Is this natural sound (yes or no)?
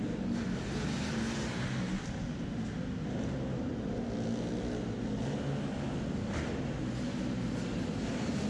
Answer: yes